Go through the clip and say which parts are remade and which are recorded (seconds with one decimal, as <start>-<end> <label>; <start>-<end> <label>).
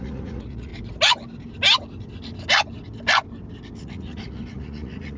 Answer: 0.0-0.7 remade; 0.7-3.8 recorded; 3.8-5.2 remade